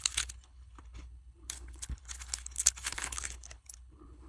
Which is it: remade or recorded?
remade